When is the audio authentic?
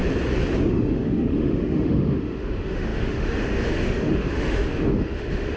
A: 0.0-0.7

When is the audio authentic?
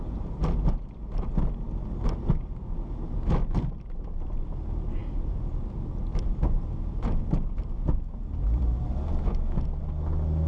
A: 0.0-10.5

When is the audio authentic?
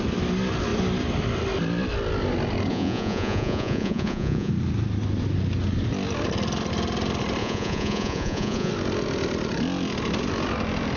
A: 0.0-2.7; 4.5-7.4; 8.7-11.0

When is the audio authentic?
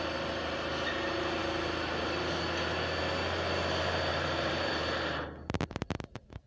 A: 0.0-4.1; 4.8-6.5